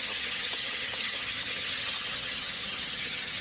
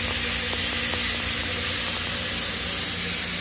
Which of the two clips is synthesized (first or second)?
first